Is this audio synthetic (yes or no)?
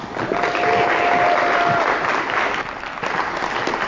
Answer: no